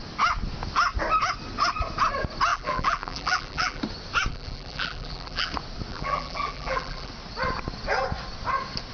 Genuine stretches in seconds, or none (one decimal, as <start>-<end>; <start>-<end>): 0.0-2.5; 3.8-4.3; 5.5-5.9; 7.1-8.9